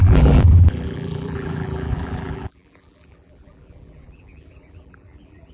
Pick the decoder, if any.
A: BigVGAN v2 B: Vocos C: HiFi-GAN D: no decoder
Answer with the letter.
A